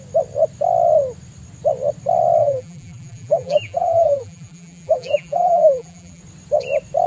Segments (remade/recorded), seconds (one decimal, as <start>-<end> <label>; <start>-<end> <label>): 0.0-2.4 recorded; 2.4-6.2 remade; 6.2-7.1 recorded